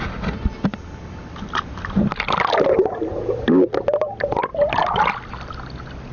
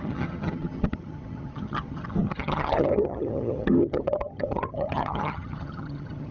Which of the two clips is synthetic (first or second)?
second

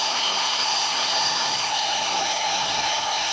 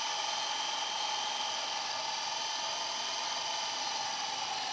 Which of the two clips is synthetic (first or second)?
first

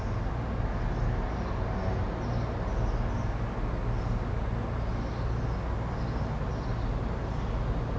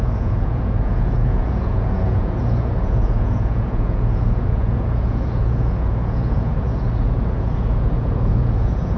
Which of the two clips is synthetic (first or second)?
second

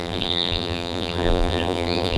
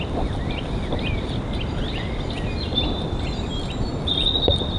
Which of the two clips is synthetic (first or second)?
first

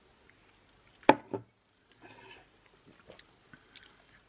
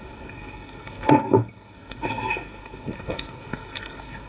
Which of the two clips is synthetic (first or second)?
second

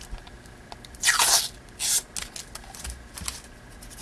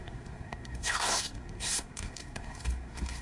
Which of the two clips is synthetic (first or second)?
second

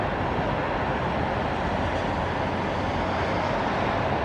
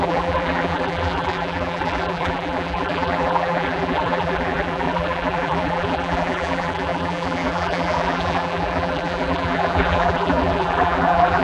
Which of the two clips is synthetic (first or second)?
second